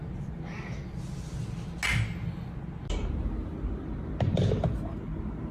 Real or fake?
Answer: real